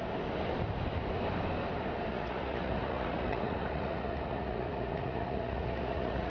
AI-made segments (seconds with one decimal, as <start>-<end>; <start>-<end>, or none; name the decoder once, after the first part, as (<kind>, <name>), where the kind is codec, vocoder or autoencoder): 2.1-6.3 (vocoder, Vocos)